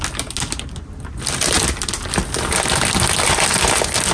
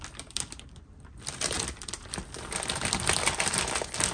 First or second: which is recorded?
first